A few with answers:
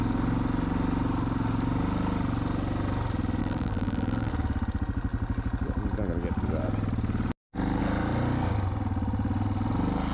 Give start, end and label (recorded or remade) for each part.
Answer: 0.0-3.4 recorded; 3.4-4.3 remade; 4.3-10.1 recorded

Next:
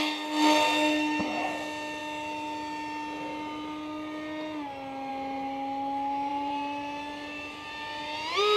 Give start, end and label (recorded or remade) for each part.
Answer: 0.0-6.3 recorded; 6.3-8.6 remade

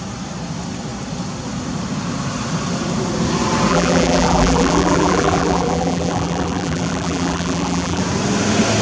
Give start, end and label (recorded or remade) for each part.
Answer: 0.0-3.7 recorded; 3.7-8.0 remade; 8.0-8.8 recorded

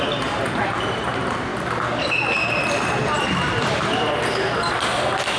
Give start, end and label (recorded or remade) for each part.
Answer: 0.0-1.5 remade; 1.5-3.2 recorded; 3.2-5.4 remade

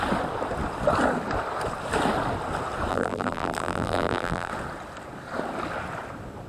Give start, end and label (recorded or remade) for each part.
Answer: 0.0-2.9 recorded; 2.9-4.5 remade; 4.5-6.5 recorded